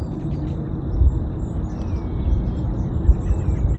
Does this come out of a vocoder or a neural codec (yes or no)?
no